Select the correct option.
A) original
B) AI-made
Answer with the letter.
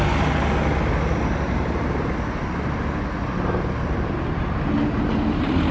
A